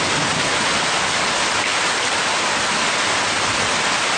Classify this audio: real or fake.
real